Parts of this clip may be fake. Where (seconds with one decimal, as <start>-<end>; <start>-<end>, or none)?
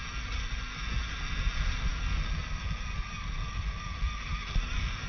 none